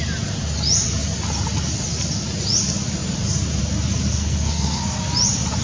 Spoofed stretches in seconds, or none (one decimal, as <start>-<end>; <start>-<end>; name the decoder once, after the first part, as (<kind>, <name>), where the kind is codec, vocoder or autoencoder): 4.1-5.0 (codec, SNAC)